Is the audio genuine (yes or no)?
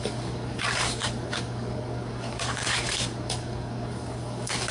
no